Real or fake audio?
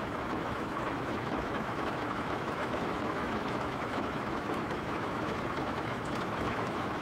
fake